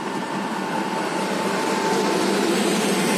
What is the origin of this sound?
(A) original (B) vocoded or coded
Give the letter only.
A